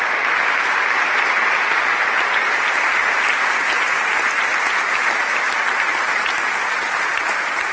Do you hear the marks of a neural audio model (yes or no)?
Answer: no